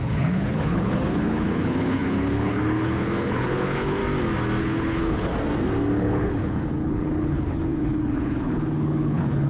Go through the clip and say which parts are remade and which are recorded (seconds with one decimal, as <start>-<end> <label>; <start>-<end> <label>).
0.0-4.0 remade; 4.0-4.6 recorded; 4.6-5.3 remade; 5.3-6.0 recorded; 6.0-9.5 remade